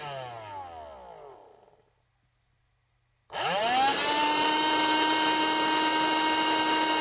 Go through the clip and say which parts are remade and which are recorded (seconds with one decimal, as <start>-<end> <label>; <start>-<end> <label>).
0.0-3.9 recorded; 3.9-5.4 remade; 5.4-7.0 recorded